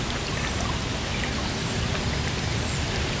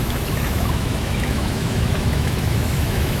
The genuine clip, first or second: first